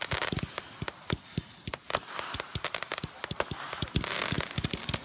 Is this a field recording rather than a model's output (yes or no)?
yes